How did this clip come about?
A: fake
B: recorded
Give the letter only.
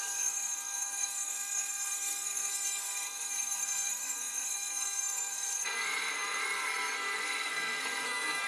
A